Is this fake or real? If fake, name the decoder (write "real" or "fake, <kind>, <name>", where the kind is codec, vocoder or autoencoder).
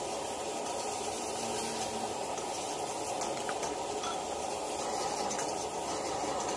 real